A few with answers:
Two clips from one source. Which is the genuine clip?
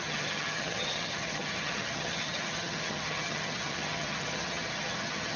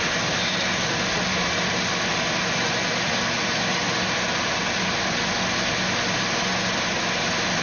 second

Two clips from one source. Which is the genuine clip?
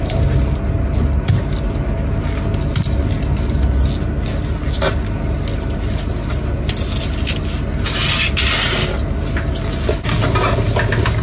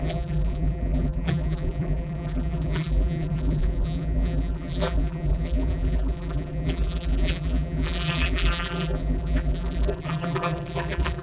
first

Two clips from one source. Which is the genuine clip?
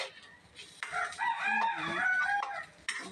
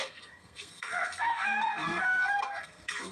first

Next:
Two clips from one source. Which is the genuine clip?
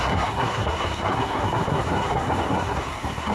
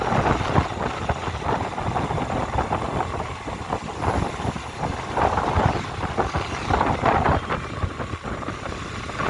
second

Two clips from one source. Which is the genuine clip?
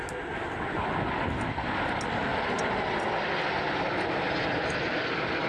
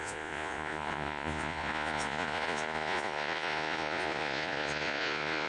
first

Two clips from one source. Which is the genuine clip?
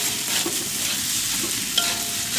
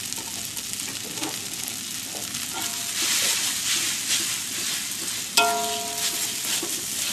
second